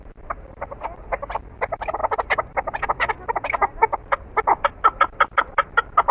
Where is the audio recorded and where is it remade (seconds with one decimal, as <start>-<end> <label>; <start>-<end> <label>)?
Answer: 0.0-6.1 recorded